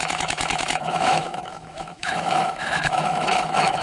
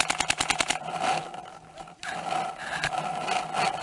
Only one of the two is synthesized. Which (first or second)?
first